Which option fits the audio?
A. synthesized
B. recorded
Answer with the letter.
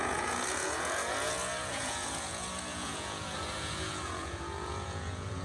A